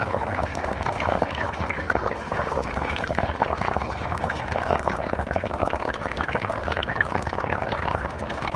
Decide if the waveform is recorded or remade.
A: remade